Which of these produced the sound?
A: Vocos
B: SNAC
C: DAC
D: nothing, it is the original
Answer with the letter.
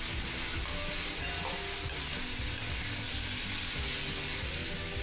D